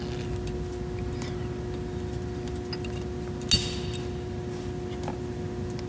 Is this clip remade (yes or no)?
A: no